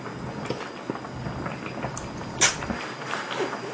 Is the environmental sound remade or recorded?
recorded